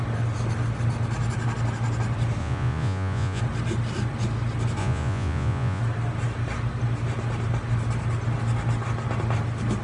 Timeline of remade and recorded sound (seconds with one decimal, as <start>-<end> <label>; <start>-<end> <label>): 0.0-2.4 recorded; 2.4-3.4 remade; 3.4-4.8 recorded; 4.8-5.8 remade; 5.8-9.8 recorded